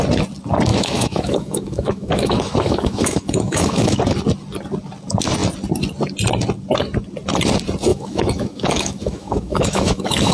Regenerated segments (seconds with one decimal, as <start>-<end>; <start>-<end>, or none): 0.7-4.0; 7.9-10.3